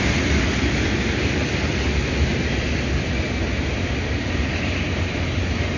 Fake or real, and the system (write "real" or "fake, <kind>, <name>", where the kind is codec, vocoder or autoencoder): real